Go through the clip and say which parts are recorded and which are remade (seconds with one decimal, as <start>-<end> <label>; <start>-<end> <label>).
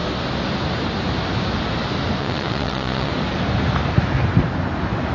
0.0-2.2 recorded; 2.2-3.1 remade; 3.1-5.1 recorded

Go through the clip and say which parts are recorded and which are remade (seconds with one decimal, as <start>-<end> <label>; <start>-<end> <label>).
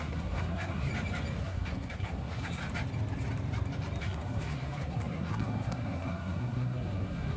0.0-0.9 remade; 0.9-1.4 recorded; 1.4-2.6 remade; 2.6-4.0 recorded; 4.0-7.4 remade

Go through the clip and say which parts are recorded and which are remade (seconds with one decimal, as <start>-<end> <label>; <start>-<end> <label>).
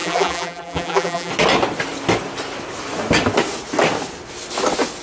0.0-1.3 remade; 1.3-5.0 recorded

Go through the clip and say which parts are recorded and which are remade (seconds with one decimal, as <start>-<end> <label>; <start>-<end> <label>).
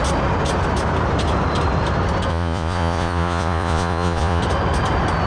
0.0-2.3 recorded; 2.3-4.4 remade; 4.4-5.3 recorded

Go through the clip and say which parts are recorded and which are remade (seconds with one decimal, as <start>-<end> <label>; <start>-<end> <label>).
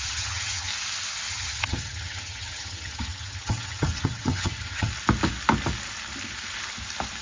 0.0-0.7 remade; 0.7-1.3 recorded; 1.3-4.9 remade; 4.9-7.2 recorded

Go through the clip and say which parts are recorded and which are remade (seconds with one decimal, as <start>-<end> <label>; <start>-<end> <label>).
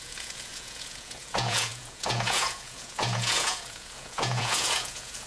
0.0-5.3 remade